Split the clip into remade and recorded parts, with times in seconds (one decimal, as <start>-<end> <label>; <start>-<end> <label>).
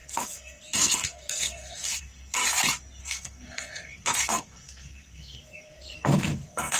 0.0-2.4 remade; 2.4-3.0 recorded; 3.0-6.8 remade